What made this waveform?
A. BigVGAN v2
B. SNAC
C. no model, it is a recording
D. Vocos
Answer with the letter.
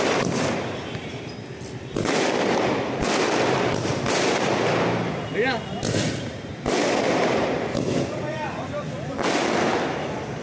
C